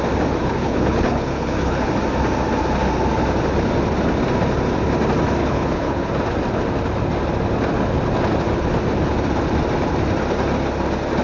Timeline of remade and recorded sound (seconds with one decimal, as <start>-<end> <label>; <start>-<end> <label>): 0.0-0.4 recorded; 0.4-1.9 remade; 1.9-5.4 recorded; 5.4-6.1 remade; 6.1-11.2 recorded